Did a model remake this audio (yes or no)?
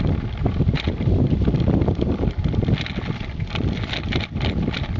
no